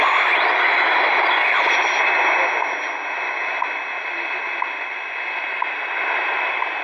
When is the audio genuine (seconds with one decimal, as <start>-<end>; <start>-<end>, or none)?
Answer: 0.0-1.4; 2.0-6.8